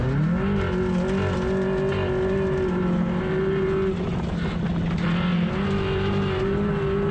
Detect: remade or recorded recorded